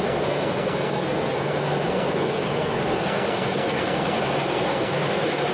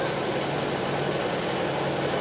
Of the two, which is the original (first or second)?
second